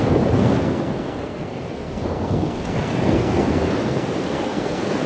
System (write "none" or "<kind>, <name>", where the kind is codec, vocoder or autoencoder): codec, SNAC